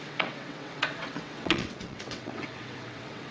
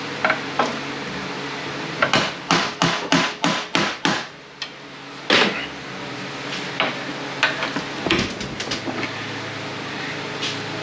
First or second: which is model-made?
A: first